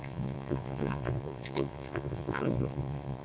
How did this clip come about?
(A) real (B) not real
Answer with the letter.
B